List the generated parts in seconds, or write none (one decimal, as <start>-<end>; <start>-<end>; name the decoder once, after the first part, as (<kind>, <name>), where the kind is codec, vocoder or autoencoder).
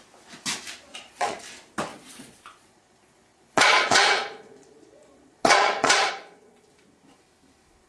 0.9-1.4 (vocoder, Vocos); 1.9-6.1